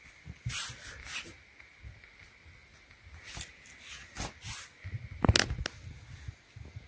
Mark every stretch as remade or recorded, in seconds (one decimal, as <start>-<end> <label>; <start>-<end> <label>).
0.0-1.3 recorded; 1.3-2.2 remade; 2.2-6.9 recorded